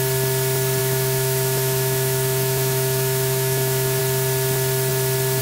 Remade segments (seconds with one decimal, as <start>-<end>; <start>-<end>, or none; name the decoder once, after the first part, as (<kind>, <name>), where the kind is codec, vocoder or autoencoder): 0.8-4.0 (autoencoder, DAC-VAE)